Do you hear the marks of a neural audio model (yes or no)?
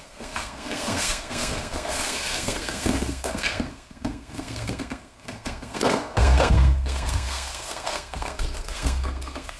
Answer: yes